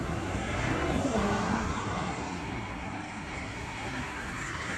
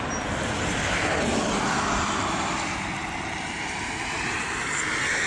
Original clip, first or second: second